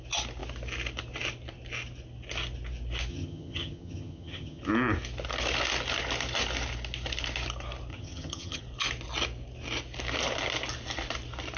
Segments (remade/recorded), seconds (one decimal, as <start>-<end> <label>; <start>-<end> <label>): 0.0-3.1 recorded; 3.1-4.6 remade; 4.6-7.9 recorded; 7.9-8.6 remade; 8.6-11.6 recorded